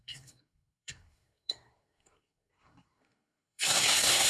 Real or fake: fake